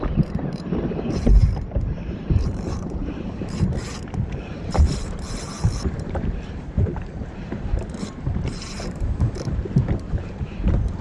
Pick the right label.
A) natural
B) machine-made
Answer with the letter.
B